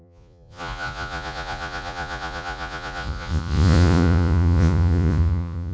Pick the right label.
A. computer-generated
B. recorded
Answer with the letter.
A